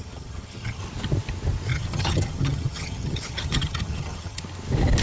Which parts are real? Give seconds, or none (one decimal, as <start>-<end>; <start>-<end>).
0.8-1.7; 4.4-5.0